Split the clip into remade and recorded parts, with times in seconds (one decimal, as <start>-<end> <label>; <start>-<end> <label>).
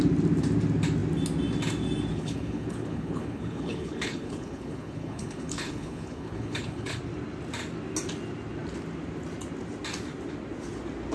0.0-2.1 recorded; 2.1-7.0 remade; 7.0-11.1 recorded